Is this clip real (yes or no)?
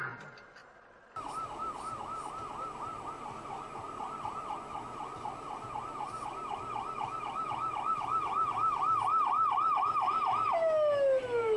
yes